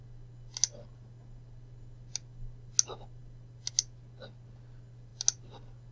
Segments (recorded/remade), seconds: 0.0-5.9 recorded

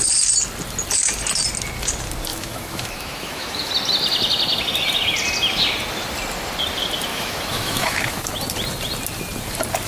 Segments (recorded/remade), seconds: 0.0-2.3 recorded; 2.3-3.7 remade; 3.7-7.1 recorded; 7.1-8.3 remade; 8.3-9.9 recorded

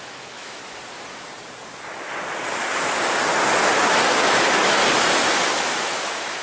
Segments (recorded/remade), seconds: 0.0-0.6 remade; 0.6-4.2 recorded; 4.2-4.8 remade; 4.8-5.5 recorded; 5.5-6.4 remade

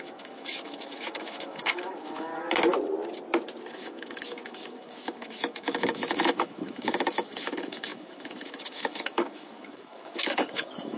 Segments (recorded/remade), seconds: 0.0-2.3 remade; 2.3-3.7 recorded; 3.7-11.0 remade

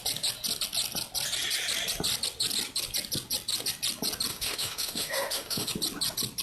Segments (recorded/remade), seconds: 0.0-4.3 recorded; 4.3-5.7 remade; 5.7-6.4 recorded

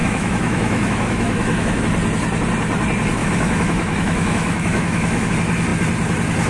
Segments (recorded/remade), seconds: 0.0-1.8 remade; 1.8-3.2 recorded; 3.2-5.3 remade; 5.3-6.5 recorded